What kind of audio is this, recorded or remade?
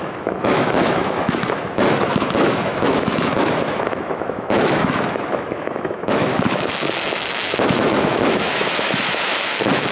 remade